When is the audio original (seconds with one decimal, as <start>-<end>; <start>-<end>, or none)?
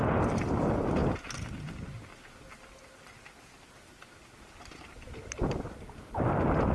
0.0-6.7